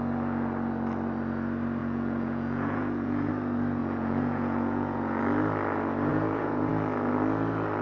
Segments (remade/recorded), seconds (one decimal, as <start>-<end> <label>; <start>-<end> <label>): 0.0-1.8 recorded; 1.8-3.3 remade; 3.3-3.8 recorded; 3.8-5.2 remade; 5.2-6.1 recorded; 6.1-6.7 remade; 6.7-7.8 recorded